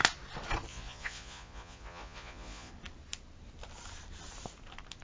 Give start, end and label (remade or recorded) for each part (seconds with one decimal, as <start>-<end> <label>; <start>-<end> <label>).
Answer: 0.0-0.7 recorded; 0.7-2.7 remade; 2.7-5.0 recorded

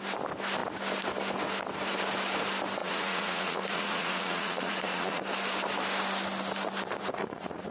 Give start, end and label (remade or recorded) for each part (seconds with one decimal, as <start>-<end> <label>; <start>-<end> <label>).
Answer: 0.0-2.8 recorded; 2.8-5.2 remade; 5.2-7.2 recorded; 7.2-7.7 remade

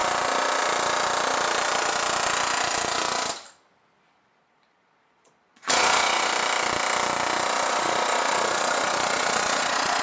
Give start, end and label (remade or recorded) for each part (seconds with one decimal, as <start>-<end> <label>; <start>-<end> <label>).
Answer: 0.0-4.4 recorded; 4.4-6.3 remade; 6.3-7.7 recorded; 7.7-10.0 remade

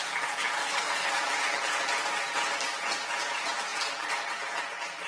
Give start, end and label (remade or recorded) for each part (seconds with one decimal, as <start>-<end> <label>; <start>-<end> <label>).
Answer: 0.0-0.6 recorded; 0.6-1.1 remade; 1.1-5.1 recorded